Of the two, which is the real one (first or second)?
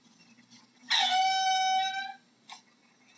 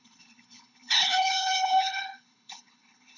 first